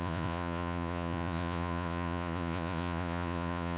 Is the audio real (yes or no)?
no